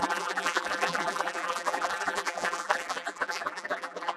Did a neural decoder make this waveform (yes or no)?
yes